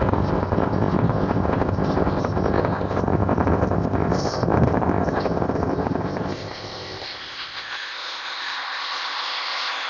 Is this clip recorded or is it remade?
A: remade